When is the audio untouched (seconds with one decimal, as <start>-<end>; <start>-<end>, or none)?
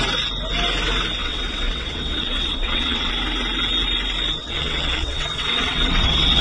0.0-1.2; 3.1-4.4